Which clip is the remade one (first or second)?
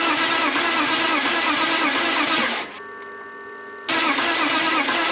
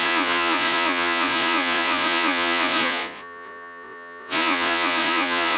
second